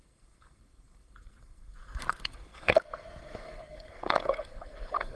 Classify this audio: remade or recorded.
remade